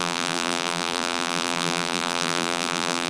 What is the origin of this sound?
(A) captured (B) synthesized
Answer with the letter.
B